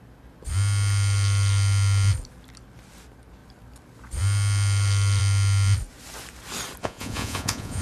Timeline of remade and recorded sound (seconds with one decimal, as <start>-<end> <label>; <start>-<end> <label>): 0.0-6.8 recorded; 6.8-7.8 remade